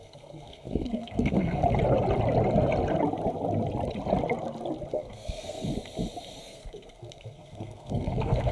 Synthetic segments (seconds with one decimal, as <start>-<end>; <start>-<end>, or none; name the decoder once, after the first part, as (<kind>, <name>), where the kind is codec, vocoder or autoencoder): 0.0-1.6 (codec, SNAC); 4.9-5.7; 6.4-8.5